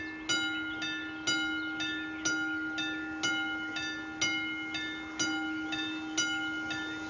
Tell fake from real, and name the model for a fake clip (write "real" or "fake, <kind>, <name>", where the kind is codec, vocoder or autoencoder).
real